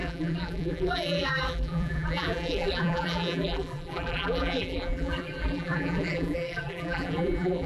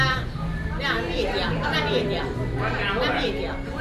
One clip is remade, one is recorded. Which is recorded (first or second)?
second